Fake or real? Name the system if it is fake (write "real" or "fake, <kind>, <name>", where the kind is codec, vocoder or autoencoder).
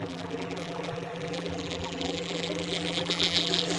fake, vocoder, BigVGAN v2